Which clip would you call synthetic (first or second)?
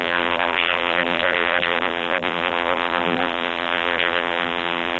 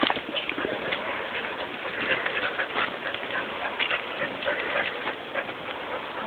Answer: first